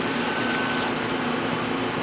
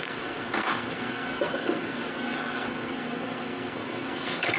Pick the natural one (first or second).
first